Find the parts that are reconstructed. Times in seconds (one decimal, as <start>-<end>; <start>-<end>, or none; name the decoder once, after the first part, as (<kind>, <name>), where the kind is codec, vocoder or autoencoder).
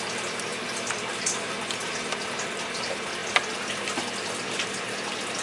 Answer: none